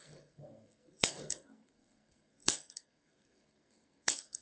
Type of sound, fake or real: fake